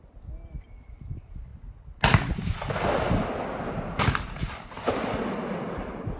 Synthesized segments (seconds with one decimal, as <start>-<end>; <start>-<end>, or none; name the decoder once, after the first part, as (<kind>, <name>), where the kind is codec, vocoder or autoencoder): none